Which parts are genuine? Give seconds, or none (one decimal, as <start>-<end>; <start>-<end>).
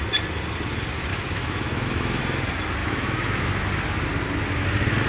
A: 0.0-1.1; 2.2-2.8; 3.5-5.1